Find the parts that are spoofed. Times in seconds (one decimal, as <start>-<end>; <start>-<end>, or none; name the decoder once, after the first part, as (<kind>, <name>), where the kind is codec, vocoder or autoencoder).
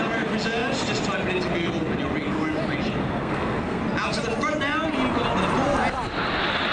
3.0-3.8 (codec, SNAC)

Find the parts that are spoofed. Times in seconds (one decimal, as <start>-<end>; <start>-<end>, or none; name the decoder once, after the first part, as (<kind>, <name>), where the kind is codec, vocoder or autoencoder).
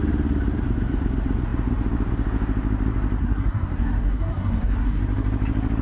3.2-5.0 (codec, SNAC)